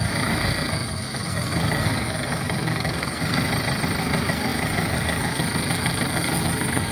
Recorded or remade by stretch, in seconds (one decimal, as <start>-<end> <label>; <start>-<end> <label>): 0.0-3.5 remade; 3.5-4.0 recorded; 4.0-6.9 remade